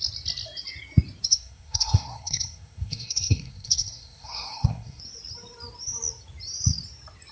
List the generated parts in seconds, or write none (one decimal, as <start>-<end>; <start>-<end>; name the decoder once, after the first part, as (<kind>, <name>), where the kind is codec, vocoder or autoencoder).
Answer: 1.3-5.0 (codec, SNAC)